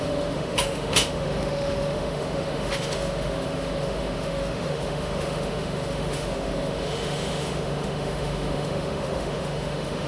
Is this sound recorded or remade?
remade